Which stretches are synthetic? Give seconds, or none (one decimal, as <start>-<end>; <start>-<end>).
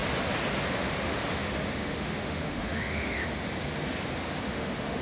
0.7-3.2; 4.4-5.0